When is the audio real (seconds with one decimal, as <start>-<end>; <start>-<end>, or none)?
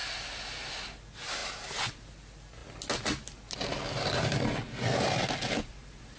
0.0-6.2